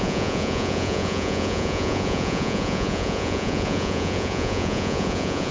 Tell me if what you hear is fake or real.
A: fake